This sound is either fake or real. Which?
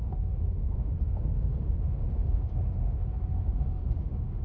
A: fake